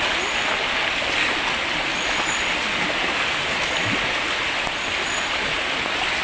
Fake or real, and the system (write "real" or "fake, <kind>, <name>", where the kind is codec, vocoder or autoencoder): real